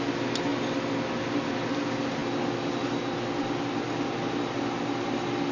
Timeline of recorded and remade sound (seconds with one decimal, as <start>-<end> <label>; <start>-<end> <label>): 0.0-5.5 recorded